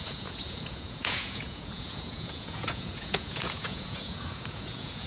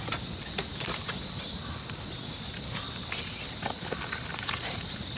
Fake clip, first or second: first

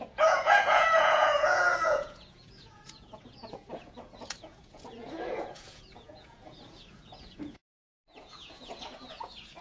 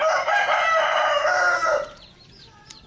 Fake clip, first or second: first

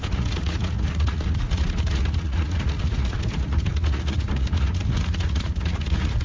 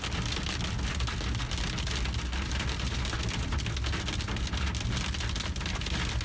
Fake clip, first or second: first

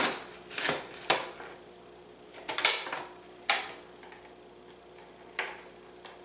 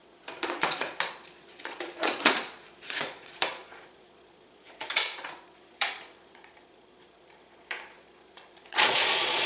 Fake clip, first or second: second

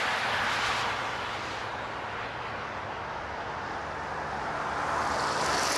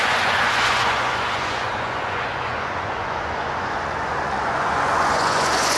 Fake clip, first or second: second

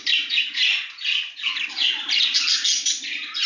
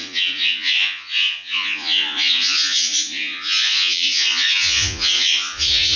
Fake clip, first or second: second